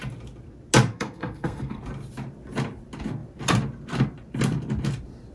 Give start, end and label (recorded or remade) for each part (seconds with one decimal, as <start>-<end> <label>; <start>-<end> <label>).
0.0-0.9 recorded; 0.9-1.8 remade; 1.8-5.3 recorded